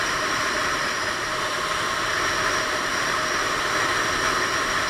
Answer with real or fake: real